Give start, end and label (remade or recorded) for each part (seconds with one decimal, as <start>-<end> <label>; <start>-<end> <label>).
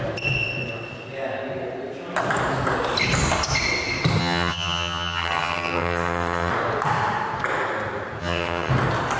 0.0-4.2 recorded; 4.2-6.5 remade; 6.5-8.2 recorded; 8.2-8.7 remade; 8.7-9.2 recorded